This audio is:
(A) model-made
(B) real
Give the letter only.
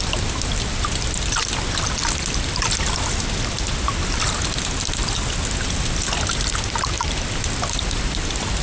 B